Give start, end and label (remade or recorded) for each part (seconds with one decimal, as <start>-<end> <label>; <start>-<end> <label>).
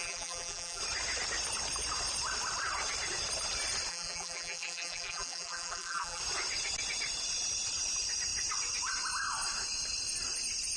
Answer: 0.0-0.8 remade; 0.8-3.9 recorded; 3.9-6.2 remade; 6.2-10.8 recorded